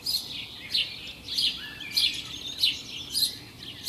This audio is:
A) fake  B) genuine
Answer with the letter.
B